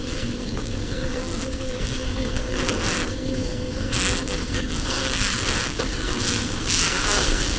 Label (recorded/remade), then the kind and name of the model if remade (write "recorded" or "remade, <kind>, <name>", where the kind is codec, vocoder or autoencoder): remade, codec, SNAC